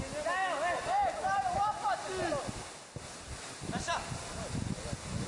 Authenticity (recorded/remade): recorded